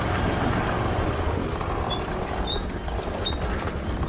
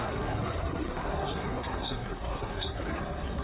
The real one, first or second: first